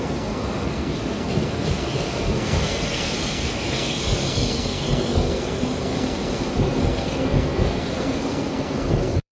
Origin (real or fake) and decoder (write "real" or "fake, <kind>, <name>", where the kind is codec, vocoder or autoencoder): fake, codec, SNAC